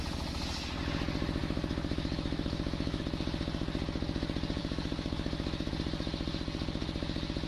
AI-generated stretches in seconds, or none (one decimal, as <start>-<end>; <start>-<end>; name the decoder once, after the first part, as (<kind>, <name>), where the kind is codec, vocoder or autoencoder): 1.4-3.0 (autoencoder, DAC-VAE); 4.6-5.7